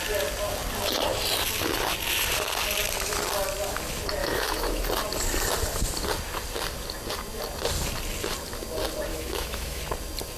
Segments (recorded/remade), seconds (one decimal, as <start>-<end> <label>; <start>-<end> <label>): 0.0-4.2 recorded; 4.2-4.8 remade; 4.8-9.1 recorded; 9.1-9.8 remade; 9.8-10.4 recorded